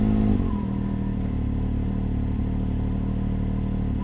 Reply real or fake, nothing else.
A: real